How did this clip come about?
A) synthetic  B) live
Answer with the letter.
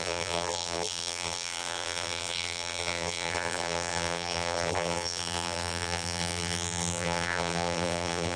A